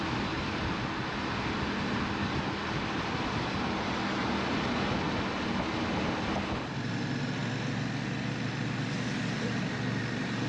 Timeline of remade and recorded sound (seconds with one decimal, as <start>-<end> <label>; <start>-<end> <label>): 0.0-10.5 recorded